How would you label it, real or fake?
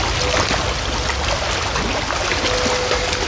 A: real